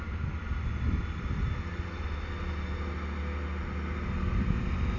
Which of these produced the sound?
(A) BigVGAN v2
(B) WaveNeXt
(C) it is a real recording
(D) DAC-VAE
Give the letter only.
C